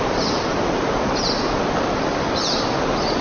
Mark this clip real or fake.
real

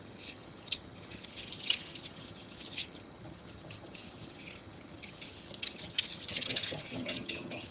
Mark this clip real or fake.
fake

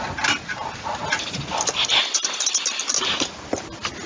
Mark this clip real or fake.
real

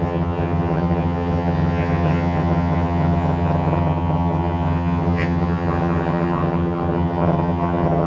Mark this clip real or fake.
fake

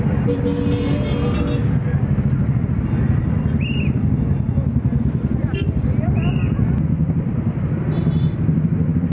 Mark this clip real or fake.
real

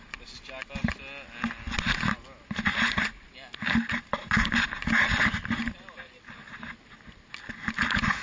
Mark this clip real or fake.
real